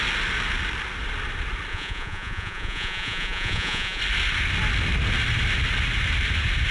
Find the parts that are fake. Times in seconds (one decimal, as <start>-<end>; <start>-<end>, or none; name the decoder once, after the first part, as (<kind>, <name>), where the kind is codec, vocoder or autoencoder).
1.7-4.0 (vocoder, Vocos)